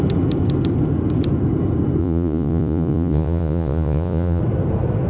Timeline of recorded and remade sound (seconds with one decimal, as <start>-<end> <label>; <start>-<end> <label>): 0.0-2.0 recorded; 2.0-4.4 remade; 4.4-5.1 recorded